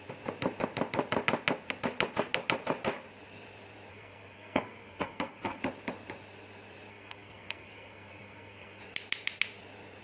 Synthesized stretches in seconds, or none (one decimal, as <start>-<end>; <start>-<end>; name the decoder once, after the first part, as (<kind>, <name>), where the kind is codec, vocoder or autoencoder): 3.9-5.6 (codec, SNAC); 6.9-8.8